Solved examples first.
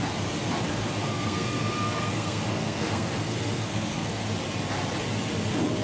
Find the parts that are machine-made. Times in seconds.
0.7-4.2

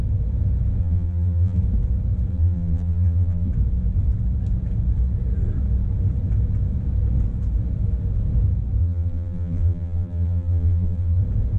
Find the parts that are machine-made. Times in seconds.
0.8-1.6; 2.3-3.5; 8.8-11.2

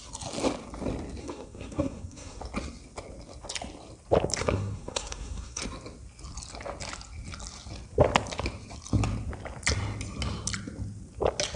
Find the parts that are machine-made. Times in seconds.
1.2-2.4; 4.4-5.6

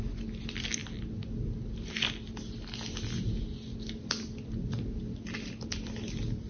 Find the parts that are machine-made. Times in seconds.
none

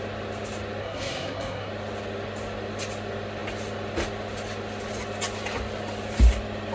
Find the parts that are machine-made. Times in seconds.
0.8-1.7

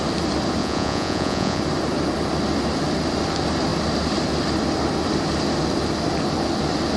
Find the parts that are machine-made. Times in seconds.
0.6-1.6